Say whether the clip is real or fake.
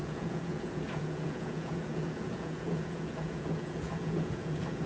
fake